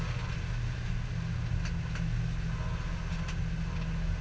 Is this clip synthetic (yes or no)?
no